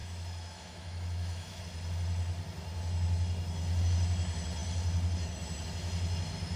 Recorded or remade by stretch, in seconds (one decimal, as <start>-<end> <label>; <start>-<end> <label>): 0.0-1.6 remade; 1.6-6.6 recorded